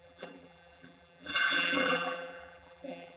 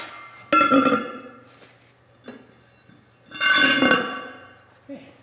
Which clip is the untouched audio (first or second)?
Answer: second